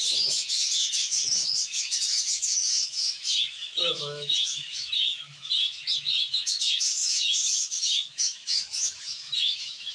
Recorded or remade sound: remade